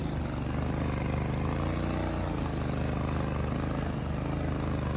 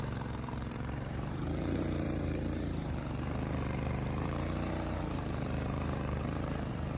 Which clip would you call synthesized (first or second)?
second